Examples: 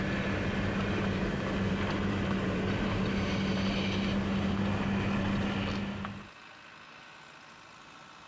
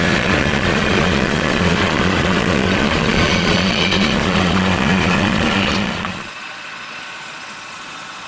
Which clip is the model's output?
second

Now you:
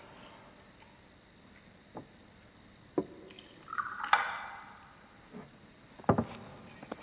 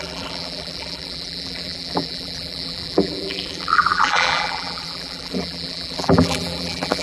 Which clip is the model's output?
second